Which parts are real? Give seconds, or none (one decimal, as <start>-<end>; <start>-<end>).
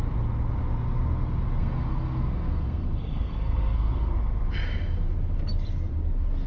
0.0-1.6; 4.1-6.5